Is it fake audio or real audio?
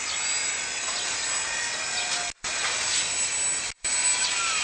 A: real